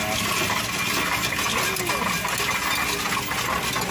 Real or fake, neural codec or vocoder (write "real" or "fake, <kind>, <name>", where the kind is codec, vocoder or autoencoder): real